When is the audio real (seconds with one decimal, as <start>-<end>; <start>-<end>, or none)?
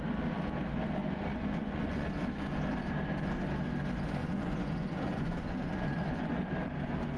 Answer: 0.0-1.0; 2.1-4.2; 6.3-7.2